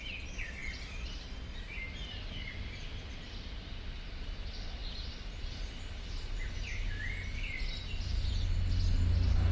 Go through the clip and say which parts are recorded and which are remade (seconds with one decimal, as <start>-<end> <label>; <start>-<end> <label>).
0.0-9.5 recorded